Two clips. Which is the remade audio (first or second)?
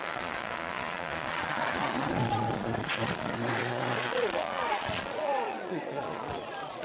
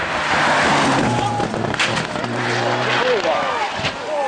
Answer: first